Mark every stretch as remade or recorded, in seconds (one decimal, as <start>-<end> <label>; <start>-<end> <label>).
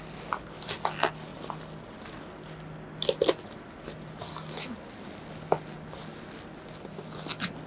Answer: 0.0-7.7 recorded